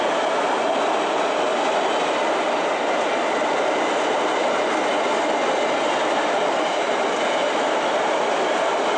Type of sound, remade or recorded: recorded